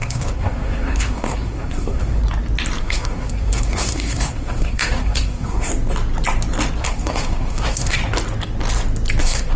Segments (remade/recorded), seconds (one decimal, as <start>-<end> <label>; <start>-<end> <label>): 0.0-2.2 remade; 2.2-2.8 recorded; 2.8-5.7 remade; 5.7-6.8 recorded; 6.8-8.0 remade; 8.0-9.2 recorded; 9.2-9.6 remade